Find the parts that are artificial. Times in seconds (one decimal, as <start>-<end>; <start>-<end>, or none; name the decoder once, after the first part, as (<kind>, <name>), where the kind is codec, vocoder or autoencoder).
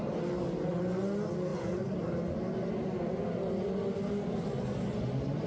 none